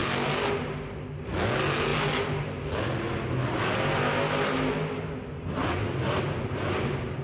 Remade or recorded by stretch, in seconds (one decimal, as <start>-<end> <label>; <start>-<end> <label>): 0.0-7.2 recorded